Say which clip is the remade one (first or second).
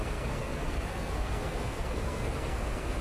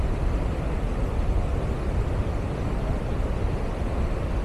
first